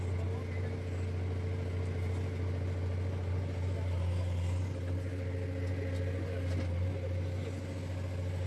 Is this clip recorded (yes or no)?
yes